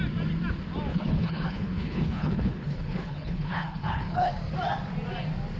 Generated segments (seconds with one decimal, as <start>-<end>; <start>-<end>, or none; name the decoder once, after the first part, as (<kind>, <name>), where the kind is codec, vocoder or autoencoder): 0.9-4.3 (codec, HILCodec)